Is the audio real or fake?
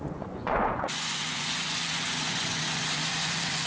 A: fake